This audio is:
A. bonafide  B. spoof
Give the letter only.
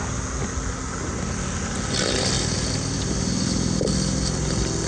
A